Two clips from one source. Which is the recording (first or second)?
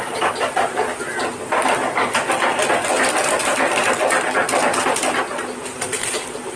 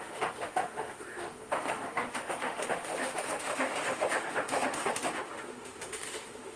first